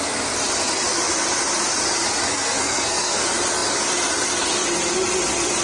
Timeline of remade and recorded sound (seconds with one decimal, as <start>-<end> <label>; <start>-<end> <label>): 0.0-2.3 recorded; 2.3-3.2 remade; 3.2-5.6 recorded